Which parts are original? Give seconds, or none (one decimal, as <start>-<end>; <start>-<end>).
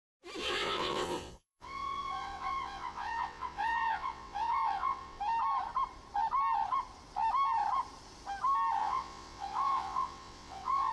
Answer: 0.0-0.4; 5.2-8.8